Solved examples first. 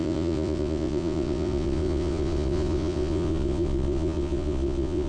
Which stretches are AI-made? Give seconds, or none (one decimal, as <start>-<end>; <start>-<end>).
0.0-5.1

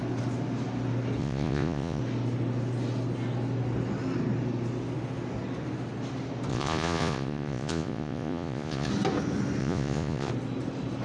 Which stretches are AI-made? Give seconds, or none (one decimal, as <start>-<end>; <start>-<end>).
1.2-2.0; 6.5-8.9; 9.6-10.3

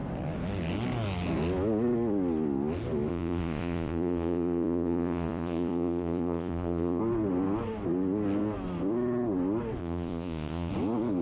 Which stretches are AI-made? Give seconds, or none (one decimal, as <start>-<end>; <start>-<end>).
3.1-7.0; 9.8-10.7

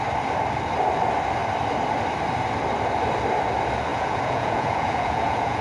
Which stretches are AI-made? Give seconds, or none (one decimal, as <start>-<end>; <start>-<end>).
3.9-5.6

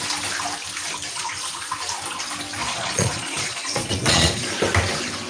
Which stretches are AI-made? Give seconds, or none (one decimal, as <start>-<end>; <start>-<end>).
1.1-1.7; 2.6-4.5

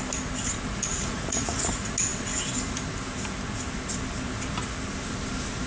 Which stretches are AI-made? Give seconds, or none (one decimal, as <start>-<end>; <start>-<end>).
0.9-1.7